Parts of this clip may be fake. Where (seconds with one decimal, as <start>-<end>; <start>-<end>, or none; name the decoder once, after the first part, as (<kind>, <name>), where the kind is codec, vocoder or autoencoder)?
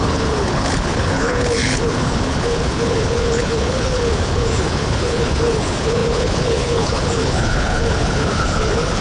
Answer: 0.0-9.0 (codec, HILCodec)